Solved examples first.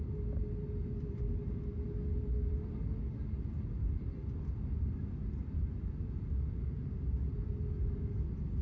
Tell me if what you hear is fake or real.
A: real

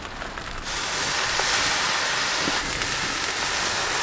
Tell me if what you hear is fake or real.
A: real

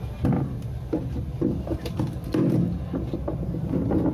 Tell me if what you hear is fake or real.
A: real